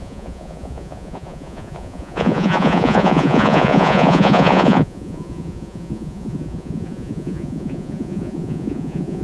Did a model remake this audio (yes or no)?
yes